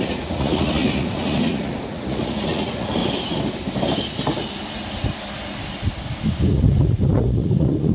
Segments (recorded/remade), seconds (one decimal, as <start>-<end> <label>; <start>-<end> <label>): 0.0-3.0 remade; 3.0-6.5 recorded; 6.5-7.9 remade